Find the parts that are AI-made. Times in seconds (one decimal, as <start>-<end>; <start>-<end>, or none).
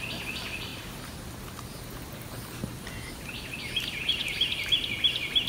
none